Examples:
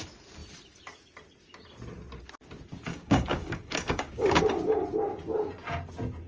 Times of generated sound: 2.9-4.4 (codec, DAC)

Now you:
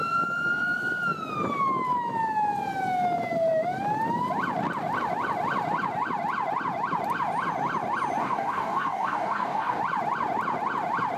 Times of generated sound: 8.2-9.8 (codec, DAC)

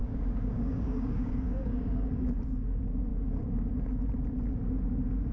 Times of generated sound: 0.0-2.1 (codec, DAC)